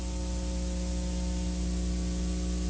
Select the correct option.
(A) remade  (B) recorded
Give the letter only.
B